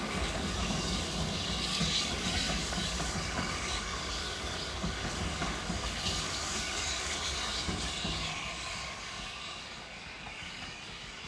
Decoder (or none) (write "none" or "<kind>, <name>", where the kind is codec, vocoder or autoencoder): codec, DAC